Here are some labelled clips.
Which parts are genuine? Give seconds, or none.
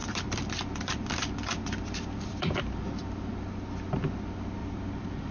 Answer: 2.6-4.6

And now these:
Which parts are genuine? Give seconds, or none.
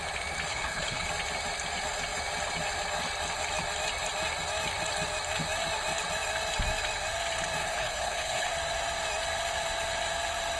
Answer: 0.0-0.5; 1.1-7.6; 8.5-10.6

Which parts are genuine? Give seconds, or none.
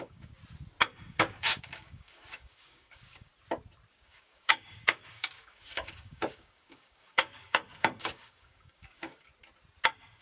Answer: 0.4-1.1; 3.3-3.9; 9.3-10.2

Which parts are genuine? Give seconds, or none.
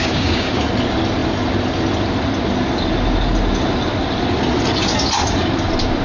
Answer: 0.6-6.0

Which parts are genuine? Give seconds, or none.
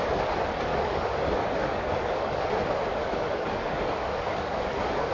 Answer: 0.0-0.7; 2.5-2.9